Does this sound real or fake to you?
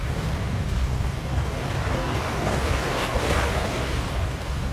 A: fake